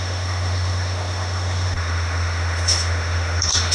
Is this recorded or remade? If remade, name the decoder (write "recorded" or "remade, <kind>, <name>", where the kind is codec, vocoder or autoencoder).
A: remade, autoencoder, DAC-VAE